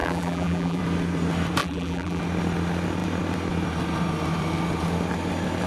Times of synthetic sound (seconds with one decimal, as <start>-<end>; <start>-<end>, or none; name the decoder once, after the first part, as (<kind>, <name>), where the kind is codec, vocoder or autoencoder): 0.0-0.8 (vocoder, BigVGAN v2); 1.6-2.2

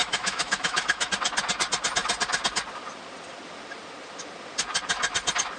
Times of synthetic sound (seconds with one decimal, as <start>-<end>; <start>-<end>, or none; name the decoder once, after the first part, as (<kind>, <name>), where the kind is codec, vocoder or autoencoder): 0.0-1.1 (autoencoder, DAC-VAE)

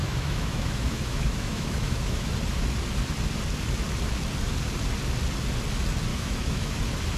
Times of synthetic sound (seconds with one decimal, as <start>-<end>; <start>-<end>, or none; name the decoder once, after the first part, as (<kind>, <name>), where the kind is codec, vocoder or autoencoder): 0.0-2.3 (autoencoder, DAC-VAE); 6.1-6.8

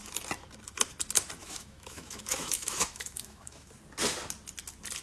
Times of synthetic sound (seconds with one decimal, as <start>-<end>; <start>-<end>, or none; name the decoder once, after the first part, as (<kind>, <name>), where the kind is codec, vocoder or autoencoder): 1.4-3.7 (autoencoder, DAC-VAE)

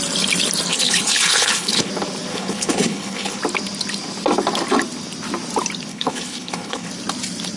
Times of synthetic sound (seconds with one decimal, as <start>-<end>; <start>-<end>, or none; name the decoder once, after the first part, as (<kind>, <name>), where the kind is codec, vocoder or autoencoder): 0.7-1.9 (codec, HILCodec); 2.3-3.4; 5.9-6.9

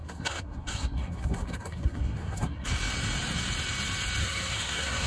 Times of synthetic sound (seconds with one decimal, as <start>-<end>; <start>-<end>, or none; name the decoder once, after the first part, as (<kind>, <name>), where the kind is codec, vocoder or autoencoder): 0.0-2.7 (codec, SNAC); 4.2-5.1

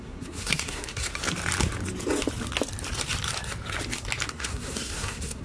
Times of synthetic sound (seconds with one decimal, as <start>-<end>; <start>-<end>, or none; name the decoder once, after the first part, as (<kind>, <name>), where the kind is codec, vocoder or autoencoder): 0.0-1.1 (codec, SNAC); 4.3-5.4